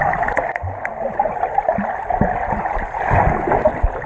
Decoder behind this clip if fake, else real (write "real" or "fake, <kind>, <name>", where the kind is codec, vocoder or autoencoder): real